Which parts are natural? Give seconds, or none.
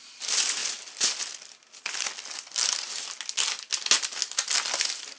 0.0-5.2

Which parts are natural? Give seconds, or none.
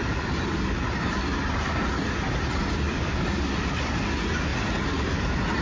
0.0-5.6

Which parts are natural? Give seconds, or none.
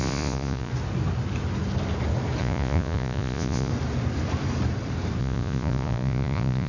0.7-2.4; 3.7-5.2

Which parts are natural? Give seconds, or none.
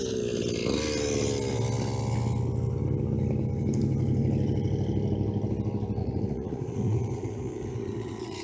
0.0-6.0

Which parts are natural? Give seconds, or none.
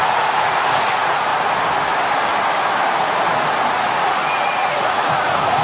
1.3-3.8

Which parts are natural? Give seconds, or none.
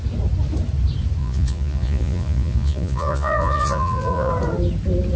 0.0-1.2; 4.3-5.2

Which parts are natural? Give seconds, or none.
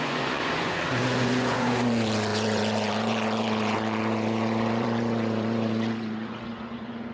none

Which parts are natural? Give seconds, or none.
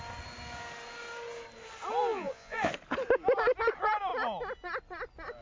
0.0-2.1; 2.7-5.4